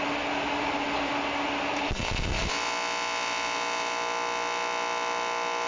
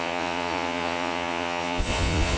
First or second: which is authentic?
first